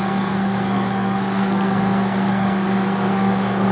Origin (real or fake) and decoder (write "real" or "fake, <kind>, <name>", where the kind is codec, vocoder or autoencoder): fake, codec, SNAC